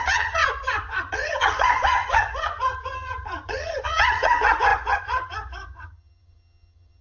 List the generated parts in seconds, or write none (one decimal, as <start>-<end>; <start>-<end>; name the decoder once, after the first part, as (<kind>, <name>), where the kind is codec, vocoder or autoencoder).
0.0-7.0 (vocoder, HiFi-GAN)